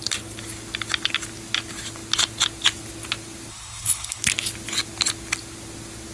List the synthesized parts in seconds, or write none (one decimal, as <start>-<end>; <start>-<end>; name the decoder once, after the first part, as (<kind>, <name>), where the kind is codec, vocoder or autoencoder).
3.5-4.2 (codec, HILCodec)